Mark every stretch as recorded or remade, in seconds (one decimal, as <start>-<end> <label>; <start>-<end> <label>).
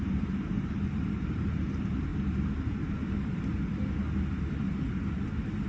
0.0-2.1 remade; 2.1-5.7 recorded